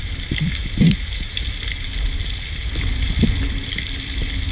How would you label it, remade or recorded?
recorded